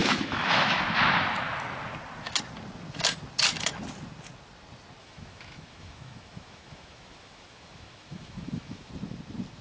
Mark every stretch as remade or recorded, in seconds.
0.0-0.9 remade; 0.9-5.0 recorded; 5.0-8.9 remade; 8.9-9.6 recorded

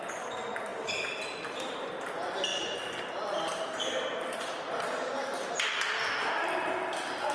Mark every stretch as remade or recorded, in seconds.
0.0-7.3 recorded